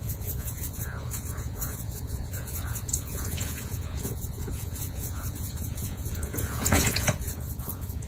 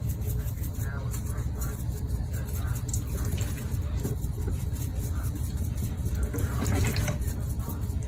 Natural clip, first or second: second